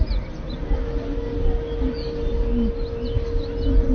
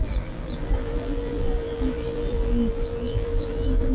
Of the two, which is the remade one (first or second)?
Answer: second